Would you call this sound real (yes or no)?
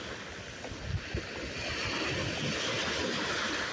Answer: yes